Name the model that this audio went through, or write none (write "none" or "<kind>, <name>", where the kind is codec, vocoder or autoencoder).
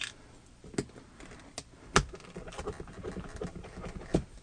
none